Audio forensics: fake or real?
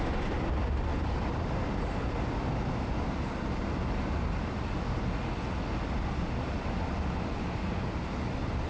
real